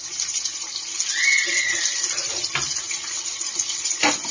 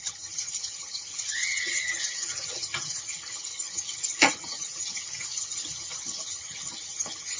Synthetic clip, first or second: second